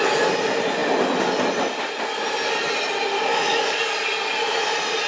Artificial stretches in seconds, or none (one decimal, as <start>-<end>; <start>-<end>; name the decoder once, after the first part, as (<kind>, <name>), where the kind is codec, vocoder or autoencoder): 3.3-3.8 (autoencoder, DAC-VAE)